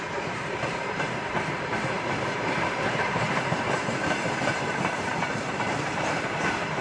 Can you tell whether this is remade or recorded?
remade